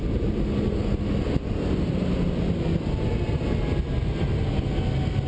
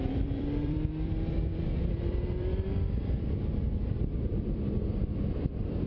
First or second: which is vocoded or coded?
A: second